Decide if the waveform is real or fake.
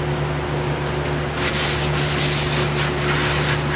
real